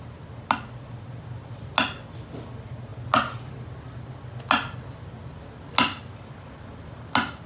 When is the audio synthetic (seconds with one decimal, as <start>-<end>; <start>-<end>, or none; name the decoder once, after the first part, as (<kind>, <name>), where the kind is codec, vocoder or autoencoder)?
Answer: none